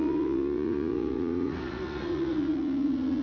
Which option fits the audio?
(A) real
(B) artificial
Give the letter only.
B